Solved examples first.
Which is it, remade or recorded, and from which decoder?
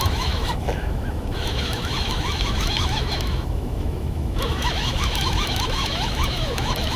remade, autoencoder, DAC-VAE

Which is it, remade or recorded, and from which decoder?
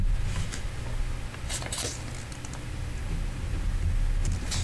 recorded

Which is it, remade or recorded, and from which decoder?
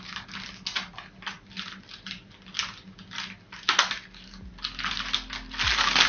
recorded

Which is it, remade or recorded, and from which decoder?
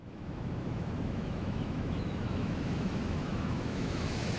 remade, autoencoder, DAC-VAE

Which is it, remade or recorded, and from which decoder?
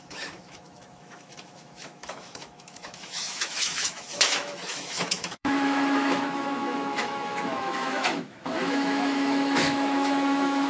remade, autoencoder, DAC-VAE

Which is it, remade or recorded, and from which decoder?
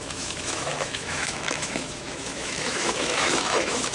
remade, autoencoder, DAC-VAE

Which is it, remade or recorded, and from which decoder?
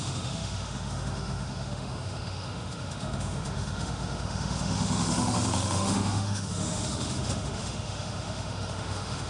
remade, autoencoder, DAC-VAE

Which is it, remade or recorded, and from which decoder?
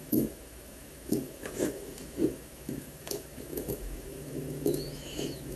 remade, autoencoder, DAC-VAE